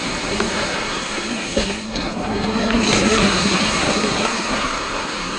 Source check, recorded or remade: remade